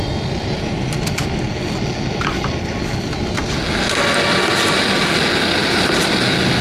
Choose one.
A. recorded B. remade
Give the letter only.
A